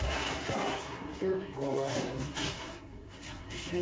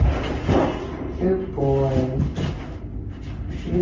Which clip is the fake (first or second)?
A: first